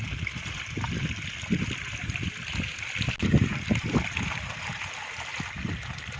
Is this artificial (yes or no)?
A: no